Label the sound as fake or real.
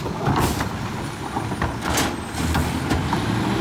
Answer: real